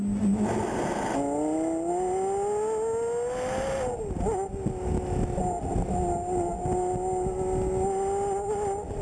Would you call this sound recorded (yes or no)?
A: yes